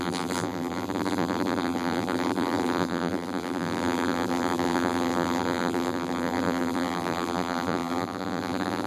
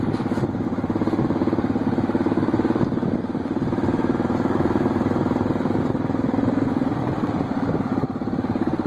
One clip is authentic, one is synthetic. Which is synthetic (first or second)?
first